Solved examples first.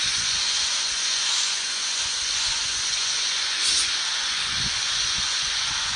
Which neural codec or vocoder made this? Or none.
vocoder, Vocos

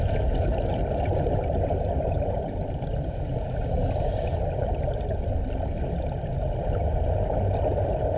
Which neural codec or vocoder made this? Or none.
none